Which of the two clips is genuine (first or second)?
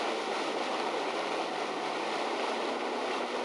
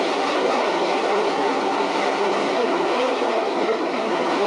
first